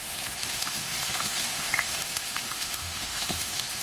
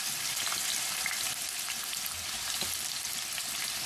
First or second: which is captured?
second